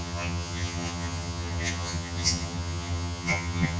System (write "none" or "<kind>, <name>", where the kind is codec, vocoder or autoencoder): vocoder, HiFi-GAN